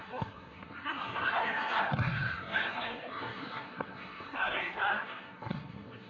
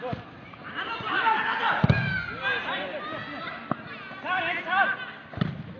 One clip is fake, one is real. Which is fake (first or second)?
first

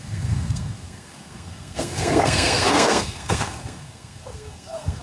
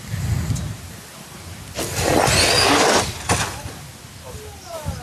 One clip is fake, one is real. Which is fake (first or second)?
first